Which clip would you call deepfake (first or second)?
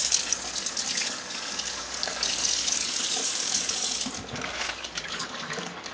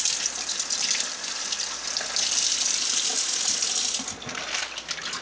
first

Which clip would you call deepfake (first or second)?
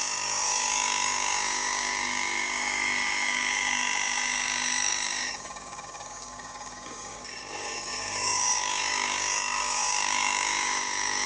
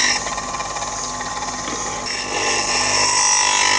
first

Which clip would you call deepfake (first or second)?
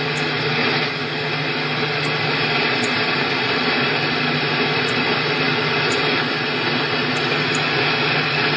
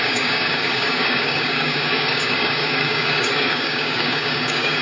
second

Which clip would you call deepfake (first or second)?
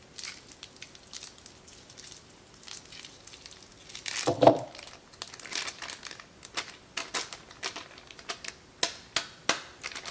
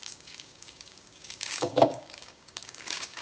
second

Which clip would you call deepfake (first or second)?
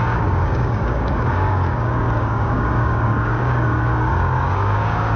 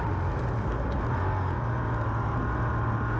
first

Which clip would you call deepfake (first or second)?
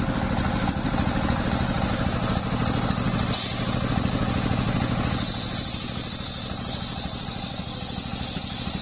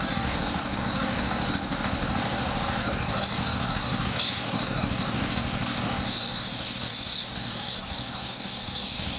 second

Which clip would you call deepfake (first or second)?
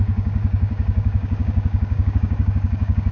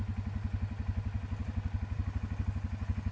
first